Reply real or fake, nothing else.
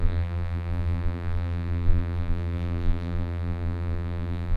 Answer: fake